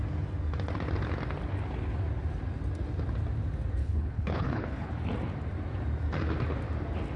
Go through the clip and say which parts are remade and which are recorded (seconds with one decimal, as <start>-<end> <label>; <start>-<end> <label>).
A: 0.0-3.8 recorded; 3.8-4.9 remade; 4.9-7.2 recorded

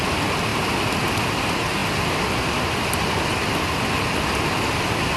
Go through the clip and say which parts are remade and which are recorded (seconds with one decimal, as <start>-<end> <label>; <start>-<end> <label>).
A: 0.0-5.2 recorded

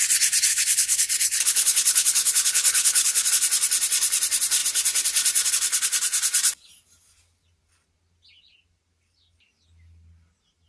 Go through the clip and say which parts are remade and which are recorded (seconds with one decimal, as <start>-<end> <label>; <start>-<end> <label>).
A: 0.0-0.5 recorded; 0.5-3.3 remade; 3.3-10.7 recorded

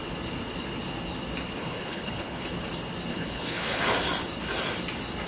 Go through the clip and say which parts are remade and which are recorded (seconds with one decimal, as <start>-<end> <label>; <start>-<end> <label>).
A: 0.0-1.6 recorded; 1.6-2.5 remade; 2.5-3.1 recorded; 3.1-3.8 remade; 3.8-5.3 recorded

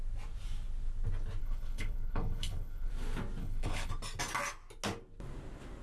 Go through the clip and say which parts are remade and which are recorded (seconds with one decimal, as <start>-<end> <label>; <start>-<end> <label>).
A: 0.0-1.4 recorded; 1.4-2.9 remade; 2.9-3.4 recorded; 3.4-3.9 remade; 3.9-5.8 recorded

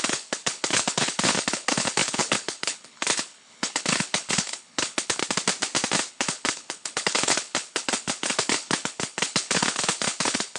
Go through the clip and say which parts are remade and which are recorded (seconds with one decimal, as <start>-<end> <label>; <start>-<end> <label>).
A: 0.0-5.2 remade; 5.2-6.1 recorded; 6.1-10.6 remade

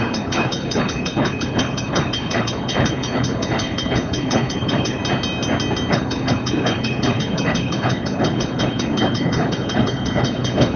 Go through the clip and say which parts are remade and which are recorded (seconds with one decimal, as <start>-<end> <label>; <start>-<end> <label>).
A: 0.0-5.0 remade; 5.0-5.9 recorded; 5.9-10.8 remade